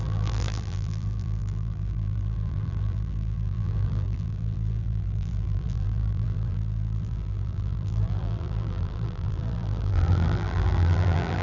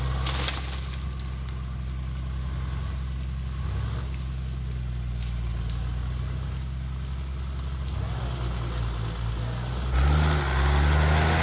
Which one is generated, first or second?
first